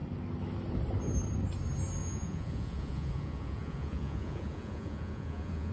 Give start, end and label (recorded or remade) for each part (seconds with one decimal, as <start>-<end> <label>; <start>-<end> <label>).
0.0-2.0 recorded; 2.0-5.7 remade